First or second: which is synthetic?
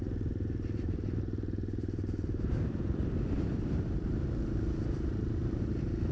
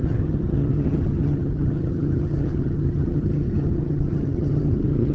second